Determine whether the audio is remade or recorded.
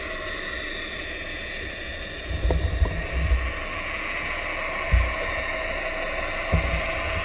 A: recorded